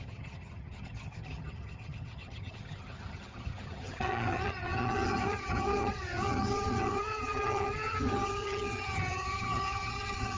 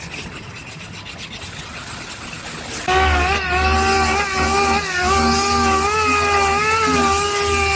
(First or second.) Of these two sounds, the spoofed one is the first